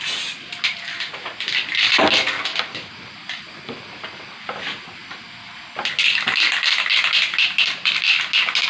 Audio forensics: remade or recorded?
recorded